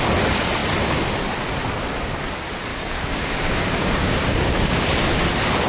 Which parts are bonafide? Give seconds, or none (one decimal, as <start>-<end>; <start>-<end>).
0.0-2.7; 4.9-5.7